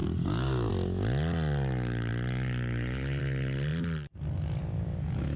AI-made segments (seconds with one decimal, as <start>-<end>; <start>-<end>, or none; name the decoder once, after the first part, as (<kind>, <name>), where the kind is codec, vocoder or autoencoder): 0.0-0.7 (codec, DAC)